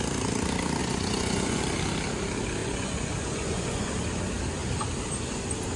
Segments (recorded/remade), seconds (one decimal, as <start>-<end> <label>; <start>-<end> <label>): 0.0-0.8 recorded; 0.8-1.6 remade; 1.6-2.6 recorded; 2.6-3.9 remade; 3.9-5.8 recorded